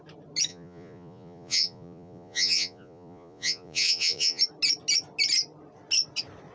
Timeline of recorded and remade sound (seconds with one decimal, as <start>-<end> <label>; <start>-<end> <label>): 0.0-0.5 recorded; 0.5-4.4 remade; 4.4-6.5 recorded